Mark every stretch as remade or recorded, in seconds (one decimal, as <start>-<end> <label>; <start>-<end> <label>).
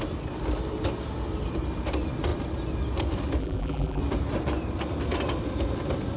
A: 0.0-3.4 recorded; 3.4-4.0 remade; 4.0-6.2 recorded